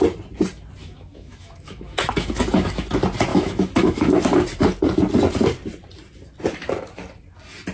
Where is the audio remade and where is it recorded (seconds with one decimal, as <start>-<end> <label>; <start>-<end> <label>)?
0.0-0.8 recorded; 0.8-2.7 remade; 2.7-3.3 recorded; 3.3-4.2 remade; 4.2-7.7 recorded

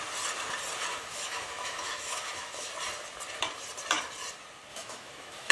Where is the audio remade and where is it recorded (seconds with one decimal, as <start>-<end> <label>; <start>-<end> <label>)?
0.0-0.9 recorded; 0.9-2.7 remade; 2.7-4.7 recorded; 4.7-5.5 remade

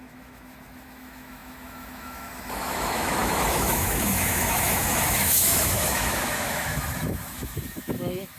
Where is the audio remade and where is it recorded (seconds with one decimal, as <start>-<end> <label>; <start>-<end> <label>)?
0.0-8.4 remade

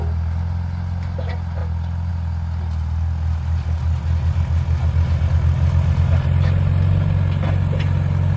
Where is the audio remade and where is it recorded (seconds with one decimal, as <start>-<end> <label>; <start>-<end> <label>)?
0.0-8.4 recorded

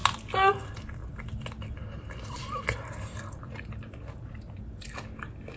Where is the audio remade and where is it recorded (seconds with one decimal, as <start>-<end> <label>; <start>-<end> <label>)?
0.0-5.6 recorded

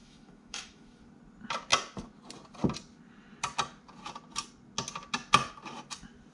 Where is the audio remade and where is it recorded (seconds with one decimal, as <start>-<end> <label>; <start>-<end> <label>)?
0.0-1.0 remade; 1.0-6.3 recorded